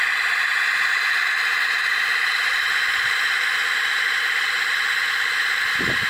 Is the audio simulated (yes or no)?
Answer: yes